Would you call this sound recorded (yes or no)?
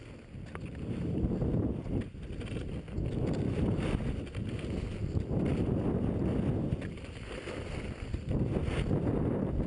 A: yes